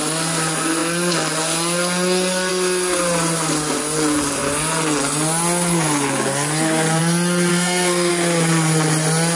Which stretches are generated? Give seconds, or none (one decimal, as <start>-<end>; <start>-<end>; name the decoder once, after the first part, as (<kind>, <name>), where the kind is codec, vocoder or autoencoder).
7.5-8.1 (codec, SNAC)